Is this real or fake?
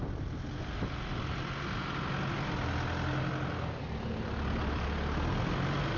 real